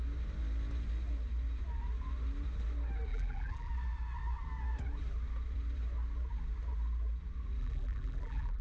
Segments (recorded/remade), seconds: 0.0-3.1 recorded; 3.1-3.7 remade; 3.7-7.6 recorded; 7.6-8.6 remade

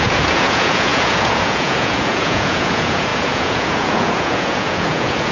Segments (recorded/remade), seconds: 0.0-5.3 remade

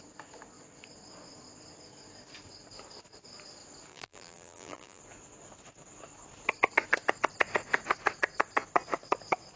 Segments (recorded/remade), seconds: 0.0-3.9 recorded; 3.9-5.0 remade; 5.0-9.6 recorded